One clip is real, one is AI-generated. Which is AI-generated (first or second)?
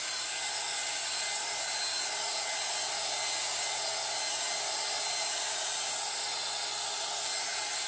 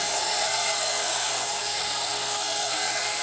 second